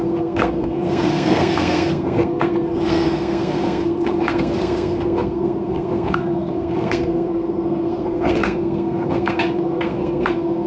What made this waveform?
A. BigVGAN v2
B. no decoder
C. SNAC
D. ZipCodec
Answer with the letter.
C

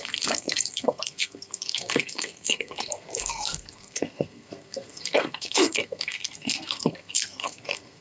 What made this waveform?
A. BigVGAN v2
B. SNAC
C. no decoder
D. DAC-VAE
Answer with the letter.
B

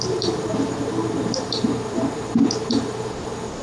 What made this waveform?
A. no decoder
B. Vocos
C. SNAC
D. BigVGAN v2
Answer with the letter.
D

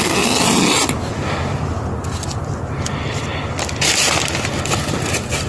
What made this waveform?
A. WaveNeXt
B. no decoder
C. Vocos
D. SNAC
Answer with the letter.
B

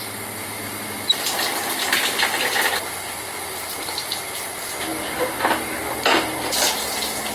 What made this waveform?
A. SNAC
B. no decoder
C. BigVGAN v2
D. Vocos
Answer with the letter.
B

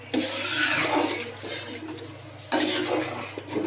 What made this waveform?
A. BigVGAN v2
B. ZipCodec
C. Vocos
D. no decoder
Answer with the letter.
D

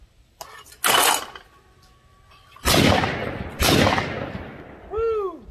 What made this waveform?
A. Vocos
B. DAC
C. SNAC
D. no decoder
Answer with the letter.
D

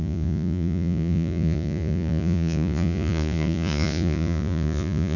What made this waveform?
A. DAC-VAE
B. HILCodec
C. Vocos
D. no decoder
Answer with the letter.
C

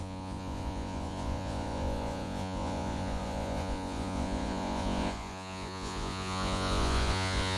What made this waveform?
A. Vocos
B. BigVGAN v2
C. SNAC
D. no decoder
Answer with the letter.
A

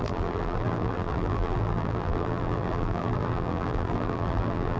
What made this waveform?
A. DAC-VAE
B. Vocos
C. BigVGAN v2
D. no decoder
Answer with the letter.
C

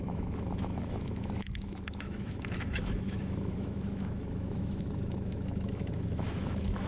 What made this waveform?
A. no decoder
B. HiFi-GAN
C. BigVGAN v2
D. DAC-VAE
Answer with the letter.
D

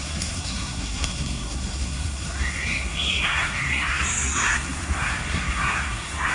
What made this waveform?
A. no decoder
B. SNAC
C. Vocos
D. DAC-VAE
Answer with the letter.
B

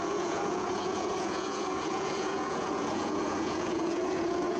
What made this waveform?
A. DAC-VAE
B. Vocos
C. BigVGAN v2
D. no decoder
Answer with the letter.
B